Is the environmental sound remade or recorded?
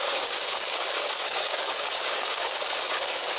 remade